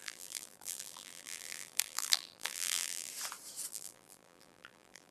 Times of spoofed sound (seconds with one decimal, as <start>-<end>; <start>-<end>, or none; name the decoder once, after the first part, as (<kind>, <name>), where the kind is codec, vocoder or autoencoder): 0.0-3.1 (vocoder, BigVGAN v2); 3.7-5.1